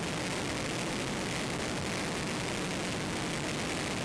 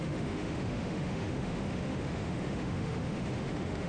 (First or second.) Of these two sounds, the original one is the first